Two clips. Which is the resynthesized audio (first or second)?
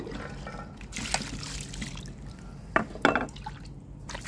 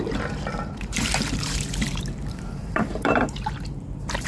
second